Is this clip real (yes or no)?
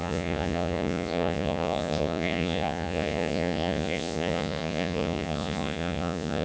no